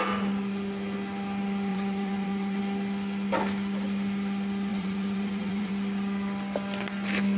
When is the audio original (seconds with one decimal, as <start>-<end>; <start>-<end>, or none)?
0.0-1.7; 2.6-4.7; 5.7-7.4